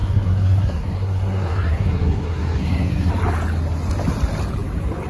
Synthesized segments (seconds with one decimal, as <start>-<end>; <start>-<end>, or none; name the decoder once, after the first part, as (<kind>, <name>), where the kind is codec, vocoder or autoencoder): 0.0-3.1 (codec, SNAC)